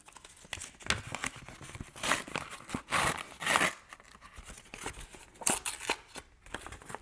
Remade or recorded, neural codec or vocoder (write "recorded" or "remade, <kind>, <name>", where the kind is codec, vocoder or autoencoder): recorded